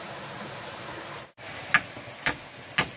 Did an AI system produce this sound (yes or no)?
no